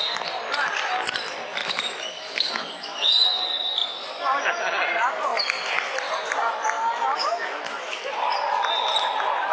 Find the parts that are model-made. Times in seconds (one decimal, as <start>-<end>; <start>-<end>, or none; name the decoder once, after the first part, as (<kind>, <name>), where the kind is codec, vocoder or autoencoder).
1.6-3.4 (autoencoder, DAC-VAE); 7.1-8.0